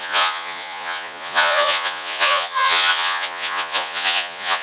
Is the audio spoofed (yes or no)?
yes